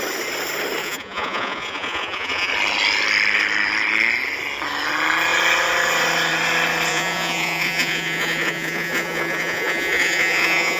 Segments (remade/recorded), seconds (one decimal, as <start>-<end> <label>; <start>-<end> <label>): 0.0-0.8 recorded; 0.8-2.5 remade; 2.5-6.9 recorded; 6.9-10.8 remade